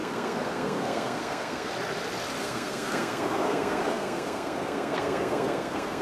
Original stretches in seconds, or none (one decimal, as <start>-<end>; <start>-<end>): 1.7-2.4